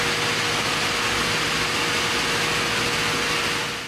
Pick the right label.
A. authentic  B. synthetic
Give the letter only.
A